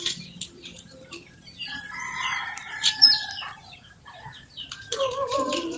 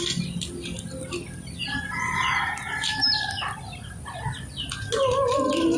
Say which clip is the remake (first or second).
first